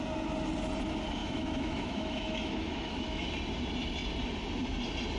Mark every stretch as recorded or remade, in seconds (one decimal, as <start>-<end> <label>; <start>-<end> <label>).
0.0-1.2 recorded; 1.2-3.3 remade; 3.3-5.2 recorded